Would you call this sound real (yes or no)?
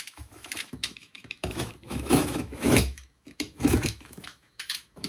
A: no